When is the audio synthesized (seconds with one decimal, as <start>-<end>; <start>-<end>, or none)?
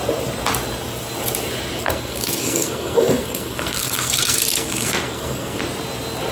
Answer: 1.8-5.6